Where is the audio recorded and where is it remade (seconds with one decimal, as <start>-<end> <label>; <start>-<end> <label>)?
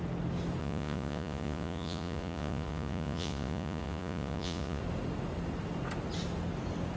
0.0-0.6 recorded; 0.6-4.8 remade; 4.8-7.0 recorded